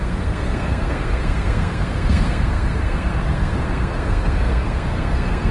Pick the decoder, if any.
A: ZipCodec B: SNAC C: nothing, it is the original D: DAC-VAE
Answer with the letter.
B